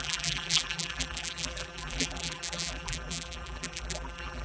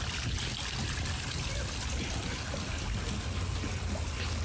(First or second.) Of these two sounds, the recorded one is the second